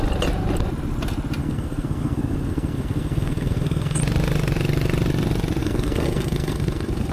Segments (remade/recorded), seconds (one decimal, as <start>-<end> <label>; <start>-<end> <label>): 0.0-1.4 recorded; 1.4-4.0 remade; 4.0-5.6 recorded; 5.6-7.1 remade